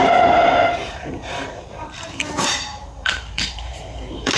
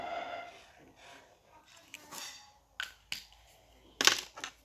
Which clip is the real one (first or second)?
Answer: second